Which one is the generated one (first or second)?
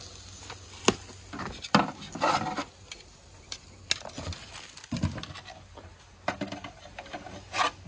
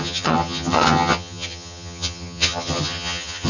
second